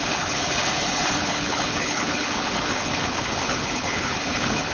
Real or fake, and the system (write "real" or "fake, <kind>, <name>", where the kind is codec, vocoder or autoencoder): fake, codec, HILCodec